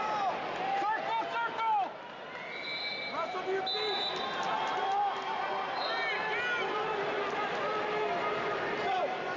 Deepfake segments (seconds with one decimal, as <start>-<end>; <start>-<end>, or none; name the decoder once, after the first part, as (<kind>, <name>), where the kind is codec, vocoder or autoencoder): none